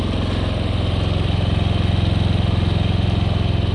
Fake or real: real